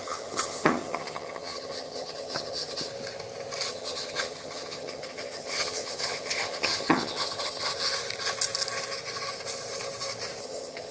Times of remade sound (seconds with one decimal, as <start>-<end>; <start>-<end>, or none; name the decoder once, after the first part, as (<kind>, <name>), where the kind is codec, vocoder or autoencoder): 0.0-2.9 (vocoder, HiFi-GAN); 3.7-7.7; 10.4-10.9